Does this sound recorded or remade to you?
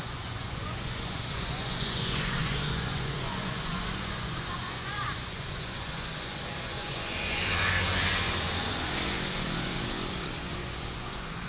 remade